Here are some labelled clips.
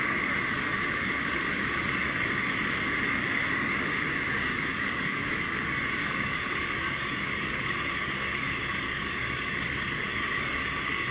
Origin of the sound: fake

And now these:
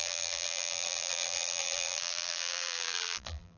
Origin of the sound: fake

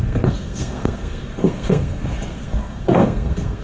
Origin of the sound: fake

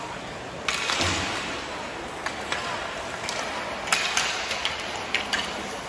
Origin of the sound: real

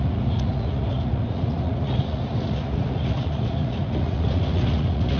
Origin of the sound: fake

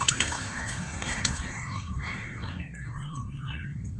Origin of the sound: fake